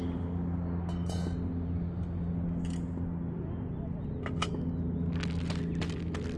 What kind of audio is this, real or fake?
real